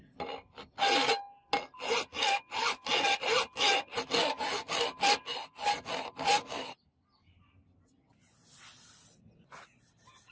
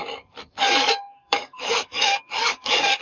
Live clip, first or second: first